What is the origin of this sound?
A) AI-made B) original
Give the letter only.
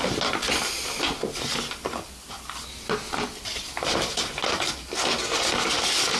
B